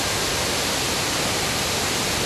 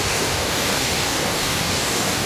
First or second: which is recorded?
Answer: first